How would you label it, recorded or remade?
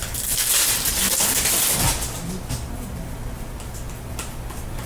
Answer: recorded